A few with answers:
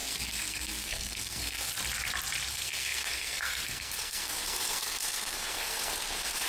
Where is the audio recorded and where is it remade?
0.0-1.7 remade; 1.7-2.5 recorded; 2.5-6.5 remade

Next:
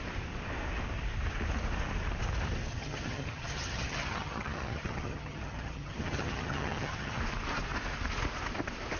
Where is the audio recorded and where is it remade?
0.0-2.7 recorded; 2.7-7.2 remade; 7.2-9.0 recorded

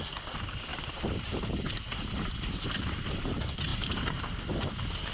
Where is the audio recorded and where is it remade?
0.0-0.7 recorded; 0.7-3.3 remade; 3.3-3.7 recorded; 3.7-4.2 remade; 4.2-5.1 recorded

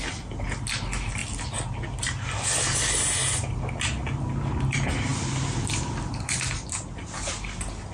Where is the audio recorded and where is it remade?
0.0-7.9 recorded

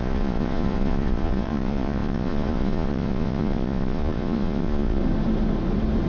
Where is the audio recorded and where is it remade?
0.0-5.0 remade; 5.0-6.1 recorded